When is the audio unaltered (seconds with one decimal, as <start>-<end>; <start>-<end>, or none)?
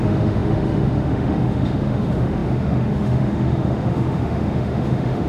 none